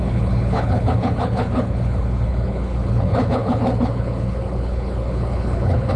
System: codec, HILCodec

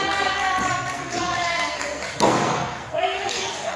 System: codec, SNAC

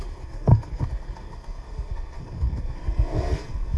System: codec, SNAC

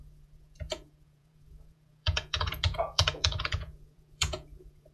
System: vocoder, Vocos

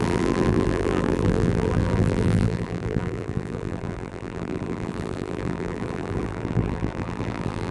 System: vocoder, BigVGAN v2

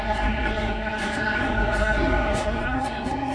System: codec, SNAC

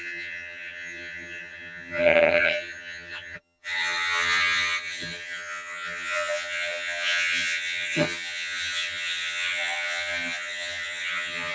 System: vocoder, HiFi-GAN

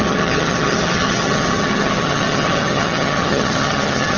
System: vocoder, HiFi-GAN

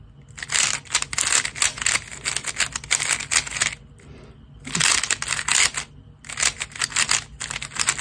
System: none